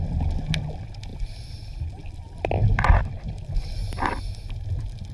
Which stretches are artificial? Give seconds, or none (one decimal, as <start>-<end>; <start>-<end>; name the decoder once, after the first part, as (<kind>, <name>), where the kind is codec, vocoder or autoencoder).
none